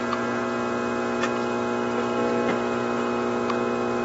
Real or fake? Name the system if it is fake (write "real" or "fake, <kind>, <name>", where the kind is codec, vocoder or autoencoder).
real